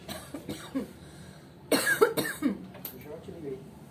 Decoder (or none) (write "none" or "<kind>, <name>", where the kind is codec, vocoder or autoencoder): vocoder, BigVGAN v2